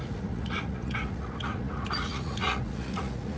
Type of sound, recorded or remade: remade